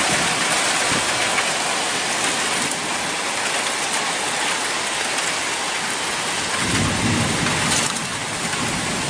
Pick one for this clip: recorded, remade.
recorded